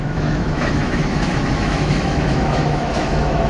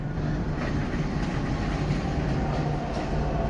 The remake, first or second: first